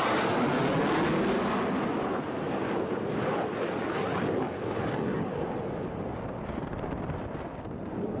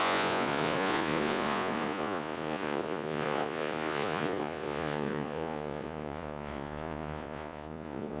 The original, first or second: first